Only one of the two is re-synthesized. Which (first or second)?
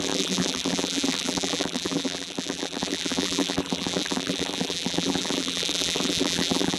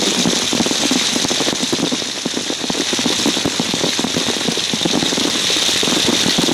first